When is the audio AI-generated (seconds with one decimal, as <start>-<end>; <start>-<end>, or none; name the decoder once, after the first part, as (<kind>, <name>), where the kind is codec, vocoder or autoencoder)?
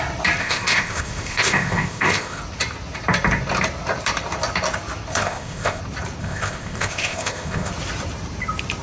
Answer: 0.4-2.4 (codec, ZipCodec); 5.1-5.8; 6.2-7.7